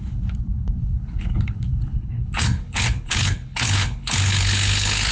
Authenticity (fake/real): fake